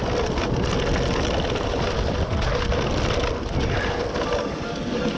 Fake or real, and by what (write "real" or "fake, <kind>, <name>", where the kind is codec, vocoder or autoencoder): real